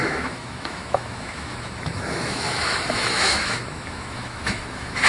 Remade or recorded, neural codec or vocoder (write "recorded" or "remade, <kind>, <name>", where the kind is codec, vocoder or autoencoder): remade, autoencoder, DAC-VAE